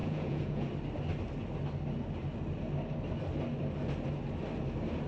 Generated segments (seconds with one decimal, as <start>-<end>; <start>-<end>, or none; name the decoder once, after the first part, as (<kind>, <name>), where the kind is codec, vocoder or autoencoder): 0.0-0.6 (vocoder, Vocos)